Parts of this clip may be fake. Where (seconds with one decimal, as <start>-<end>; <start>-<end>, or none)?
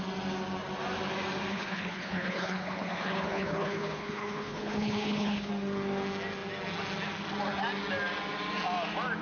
1.5-5.5